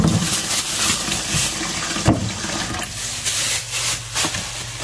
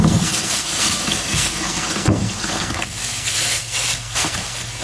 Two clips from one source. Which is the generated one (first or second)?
second